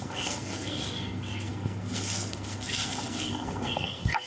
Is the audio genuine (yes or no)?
no